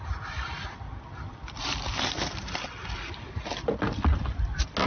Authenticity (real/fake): real